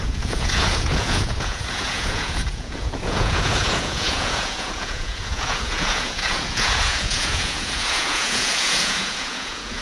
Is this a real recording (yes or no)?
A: no